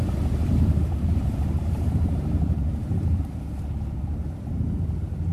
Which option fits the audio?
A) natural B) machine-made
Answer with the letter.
B